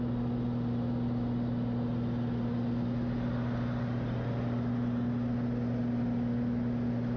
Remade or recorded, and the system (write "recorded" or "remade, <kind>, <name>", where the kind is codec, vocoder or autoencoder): recorded